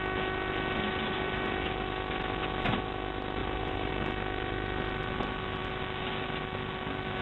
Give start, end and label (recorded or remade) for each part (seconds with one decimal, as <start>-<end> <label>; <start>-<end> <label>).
0.0-3.4 recorded; 3.4-3.9 remade; 3.9-7.2 recorded